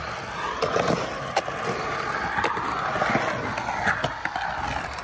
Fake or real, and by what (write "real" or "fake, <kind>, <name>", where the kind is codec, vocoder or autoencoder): real